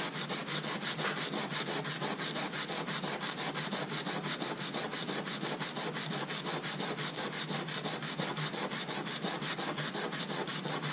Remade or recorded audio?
recorded